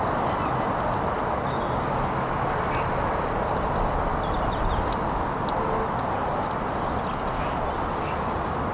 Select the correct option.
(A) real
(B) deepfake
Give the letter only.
A